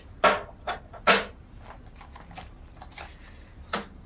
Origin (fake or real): real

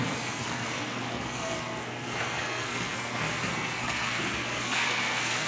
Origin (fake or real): fake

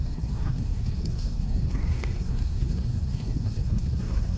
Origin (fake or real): fake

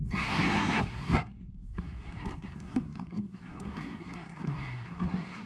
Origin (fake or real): fake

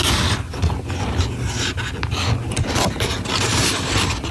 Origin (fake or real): real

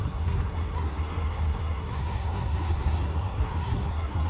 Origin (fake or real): fake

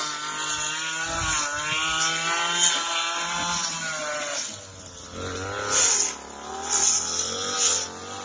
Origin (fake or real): real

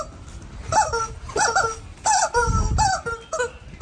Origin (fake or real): real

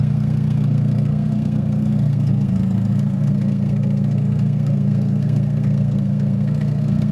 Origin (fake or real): fake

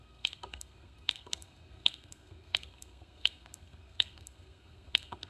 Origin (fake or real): fake